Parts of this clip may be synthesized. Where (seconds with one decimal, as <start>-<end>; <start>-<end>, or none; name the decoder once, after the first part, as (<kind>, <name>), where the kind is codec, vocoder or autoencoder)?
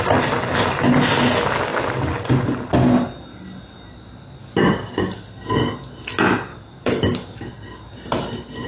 4.4-5.2 (codec, DAC); 6.5-7.5